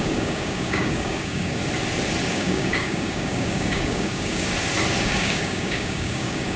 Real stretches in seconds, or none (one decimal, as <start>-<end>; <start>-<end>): 1.6-2.3; 4.5-5.0